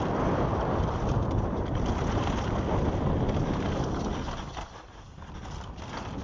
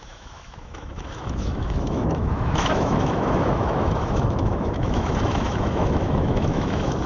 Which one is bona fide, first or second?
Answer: first